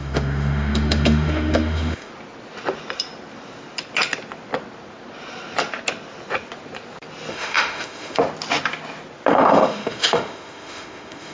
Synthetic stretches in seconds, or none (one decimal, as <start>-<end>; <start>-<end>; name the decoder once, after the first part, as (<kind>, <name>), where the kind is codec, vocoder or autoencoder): 0.0-2.1 (autoencoder, DAC-VAE); 7.3-8.2; 9.3-11.3